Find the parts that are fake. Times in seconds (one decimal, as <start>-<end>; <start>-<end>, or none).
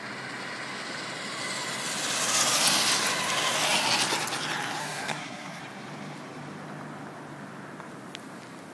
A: 4.8-5.6